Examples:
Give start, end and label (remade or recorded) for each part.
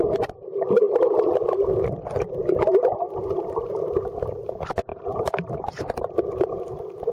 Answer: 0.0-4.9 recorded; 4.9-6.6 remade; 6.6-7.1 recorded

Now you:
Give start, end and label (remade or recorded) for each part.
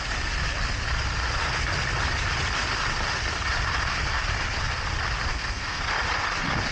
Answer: 0.0-5.3 recorded; 5.3-5.8 remade; 5.8-6.7 recorded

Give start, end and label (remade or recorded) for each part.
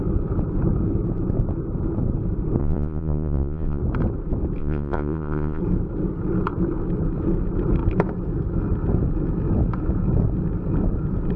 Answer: 0.0-2.6 recorded; 2.6-3.8 remade; 3.8-4.6 recorded; 4.6-5.6 remade; 5.6-11.4 recorded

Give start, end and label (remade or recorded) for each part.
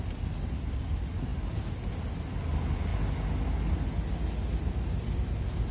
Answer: 0.0-5.7 recorded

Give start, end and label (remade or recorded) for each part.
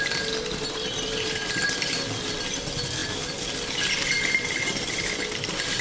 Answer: 0.0-5.8 recorded